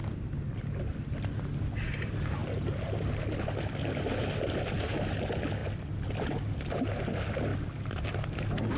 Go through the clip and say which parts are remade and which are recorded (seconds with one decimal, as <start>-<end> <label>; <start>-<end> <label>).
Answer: 0.0-8.8 recorded